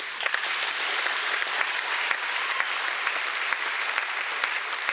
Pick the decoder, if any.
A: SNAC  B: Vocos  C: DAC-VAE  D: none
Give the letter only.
D